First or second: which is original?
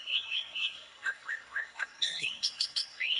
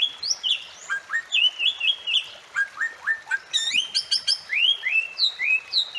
second